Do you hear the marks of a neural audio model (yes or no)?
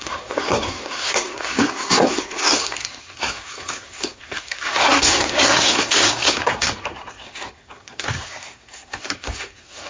yes